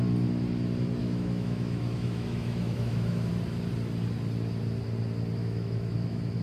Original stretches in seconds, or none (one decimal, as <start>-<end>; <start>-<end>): 0.0-1.0; 3.3-5.4